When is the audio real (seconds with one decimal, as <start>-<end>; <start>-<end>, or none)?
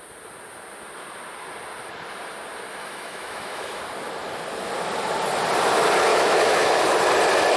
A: 0.0-2.8; 3.8-6.1; 6.8-7.6